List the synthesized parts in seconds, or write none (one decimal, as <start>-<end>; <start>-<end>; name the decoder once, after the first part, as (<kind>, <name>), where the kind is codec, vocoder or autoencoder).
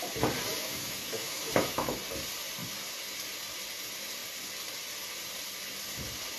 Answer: 0.5-2.0 (autoencoder, DAC-VAE)